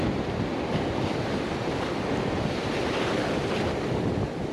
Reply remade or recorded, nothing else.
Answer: recorded